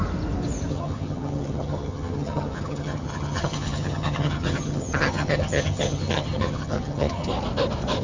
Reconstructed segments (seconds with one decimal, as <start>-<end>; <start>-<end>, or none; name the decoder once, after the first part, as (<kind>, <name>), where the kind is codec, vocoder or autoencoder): 0.7-7.3 (vocoder, HiFi-GAN)